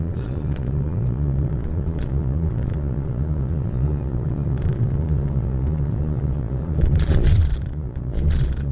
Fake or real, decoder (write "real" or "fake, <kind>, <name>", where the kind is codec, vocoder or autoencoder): fake, vocoder, Vocos